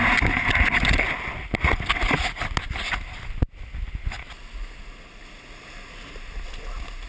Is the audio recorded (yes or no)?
yes